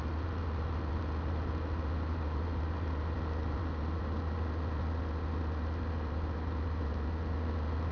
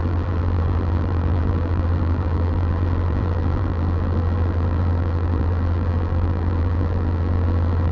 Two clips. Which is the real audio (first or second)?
first